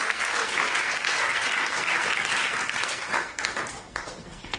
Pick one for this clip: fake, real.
fake